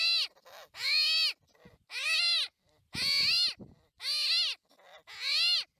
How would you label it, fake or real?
real